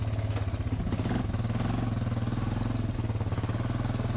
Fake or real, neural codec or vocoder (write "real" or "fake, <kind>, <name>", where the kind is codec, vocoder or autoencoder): real